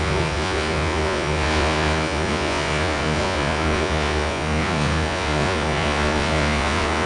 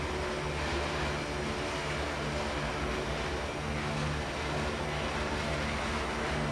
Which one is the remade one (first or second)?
first